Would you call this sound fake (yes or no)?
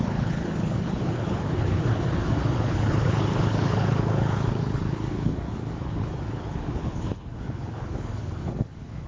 yes